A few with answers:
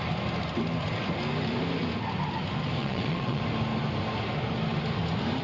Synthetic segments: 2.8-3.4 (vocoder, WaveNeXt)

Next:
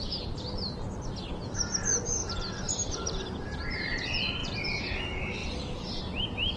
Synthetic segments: 2.2-4.0 (vocoder, BigVGAN v2); 4.4-5.0; 5.4-6.0

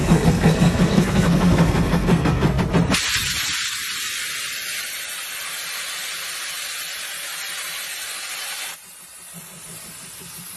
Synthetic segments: 0.0-2.6 (codec, SNAC)

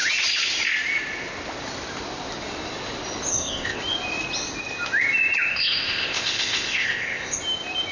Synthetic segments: 3.3-3.8 (codec, ZipCodec); 5.5-7.4

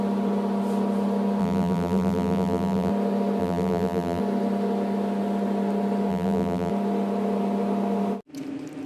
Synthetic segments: 1.4-2.9 (vocoder, BigVGAN v2); 3.4-4.2; 6.1-6.7

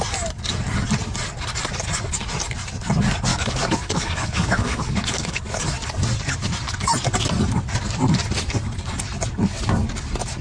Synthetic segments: 3.3-5.6 (codec, DAC)

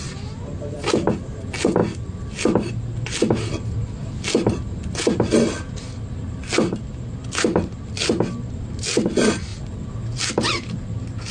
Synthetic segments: none